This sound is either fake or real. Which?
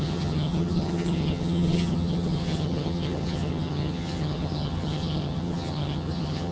fake